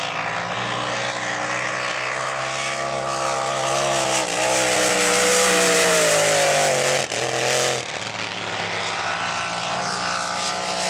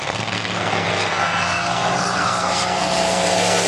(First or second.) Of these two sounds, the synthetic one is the second